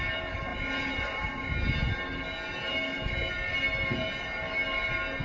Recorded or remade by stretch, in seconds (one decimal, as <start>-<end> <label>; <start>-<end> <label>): 0.0-5.2 recorded